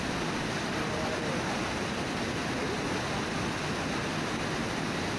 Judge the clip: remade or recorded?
recorded